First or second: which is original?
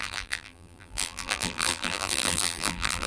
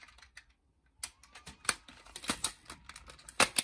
second